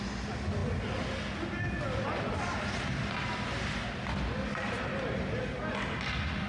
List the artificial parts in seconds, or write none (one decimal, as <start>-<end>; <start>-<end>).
none